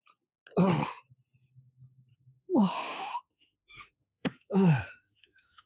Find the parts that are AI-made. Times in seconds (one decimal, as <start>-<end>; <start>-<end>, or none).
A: 2.1-5.7